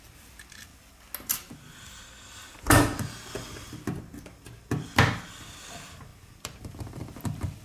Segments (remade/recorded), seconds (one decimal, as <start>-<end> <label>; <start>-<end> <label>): 0.0-0.7 remade; 0.7-5.3 recorded; 5.3-7.6 remade